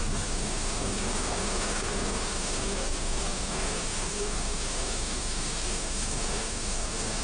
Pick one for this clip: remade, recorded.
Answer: remade